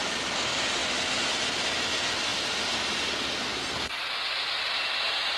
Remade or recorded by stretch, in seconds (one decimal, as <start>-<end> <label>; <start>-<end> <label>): 0.0-3.4 recorded; 3.4-4.0 remade; 4.0-5.4 recorded